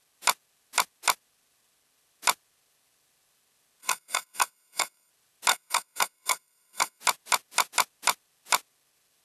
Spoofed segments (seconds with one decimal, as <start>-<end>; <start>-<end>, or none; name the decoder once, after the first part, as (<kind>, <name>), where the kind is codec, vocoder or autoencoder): 3.8-5.1 (codec, SNAC); 5.5-7.0